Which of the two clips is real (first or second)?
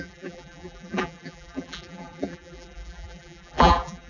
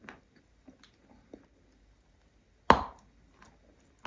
second